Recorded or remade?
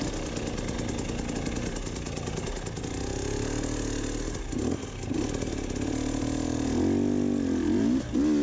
recorded